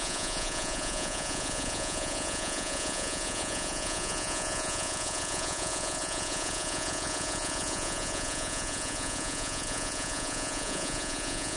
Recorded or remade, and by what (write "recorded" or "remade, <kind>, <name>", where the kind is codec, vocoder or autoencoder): remade, vocoder, Vocos